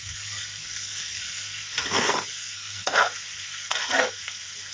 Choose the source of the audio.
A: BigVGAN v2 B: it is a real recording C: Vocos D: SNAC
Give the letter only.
D